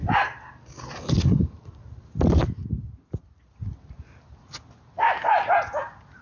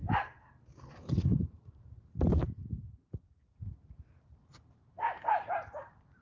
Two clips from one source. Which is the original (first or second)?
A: first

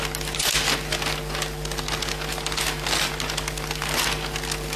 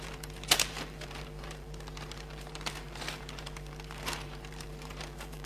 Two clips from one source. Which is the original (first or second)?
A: first